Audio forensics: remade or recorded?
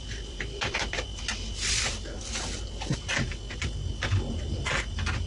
remade